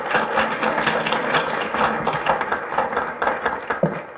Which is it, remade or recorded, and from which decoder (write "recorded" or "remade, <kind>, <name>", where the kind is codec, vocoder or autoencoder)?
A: recorded